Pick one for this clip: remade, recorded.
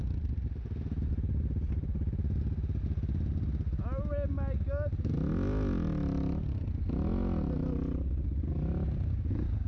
recorded